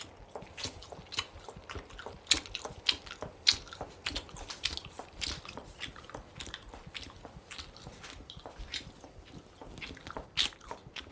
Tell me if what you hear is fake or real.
real